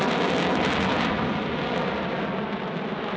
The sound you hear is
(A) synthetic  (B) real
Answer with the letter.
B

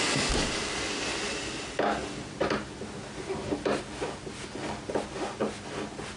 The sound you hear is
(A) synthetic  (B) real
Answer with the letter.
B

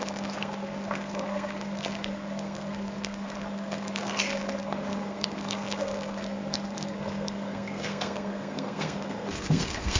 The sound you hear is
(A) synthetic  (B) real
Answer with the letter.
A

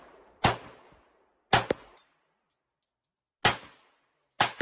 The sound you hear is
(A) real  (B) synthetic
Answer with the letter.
A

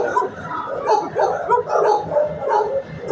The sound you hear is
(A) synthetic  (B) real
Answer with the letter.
A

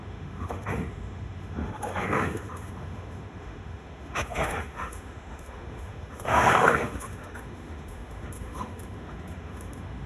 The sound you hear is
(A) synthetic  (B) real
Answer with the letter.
A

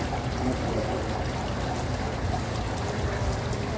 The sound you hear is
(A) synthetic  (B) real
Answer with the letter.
B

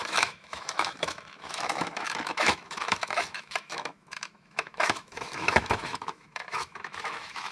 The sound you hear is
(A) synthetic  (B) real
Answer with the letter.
A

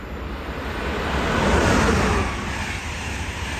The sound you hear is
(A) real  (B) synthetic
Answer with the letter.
A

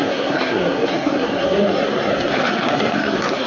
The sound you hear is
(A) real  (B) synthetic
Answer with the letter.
B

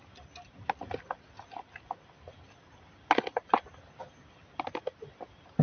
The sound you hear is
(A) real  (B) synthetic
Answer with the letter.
A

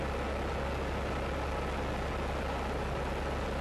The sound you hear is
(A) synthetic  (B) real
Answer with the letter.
B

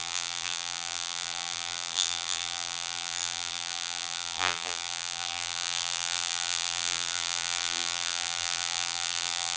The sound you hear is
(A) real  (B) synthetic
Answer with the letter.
B